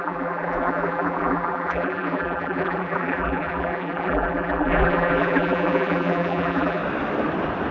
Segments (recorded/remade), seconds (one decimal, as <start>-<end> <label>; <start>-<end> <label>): 0.0-6.8 remade; 6.8-7.7 recorded